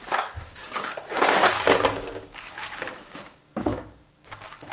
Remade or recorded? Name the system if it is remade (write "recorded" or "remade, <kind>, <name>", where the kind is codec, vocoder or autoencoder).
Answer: remade, codec, DAC